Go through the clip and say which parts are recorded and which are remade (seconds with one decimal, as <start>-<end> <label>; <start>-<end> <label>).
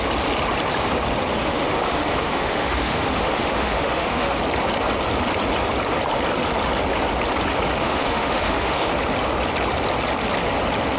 0.0-1.3 recorded; 1.3-4.4 remade; 4.4-7.8 recorded; 7.8-8.9 remade; 8.9-11.0 recorded